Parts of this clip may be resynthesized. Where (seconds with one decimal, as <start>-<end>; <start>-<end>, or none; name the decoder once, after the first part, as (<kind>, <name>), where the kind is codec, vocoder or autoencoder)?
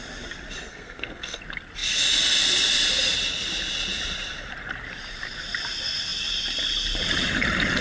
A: 0.7-1.4 (codec, SNAC)